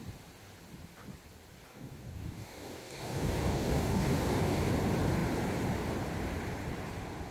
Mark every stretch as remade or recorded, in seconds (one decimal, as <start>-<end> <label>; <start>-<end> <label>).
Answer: 0.0-1.7 recorded; 1.7-4.7 remade; 4.7-7.3 recorded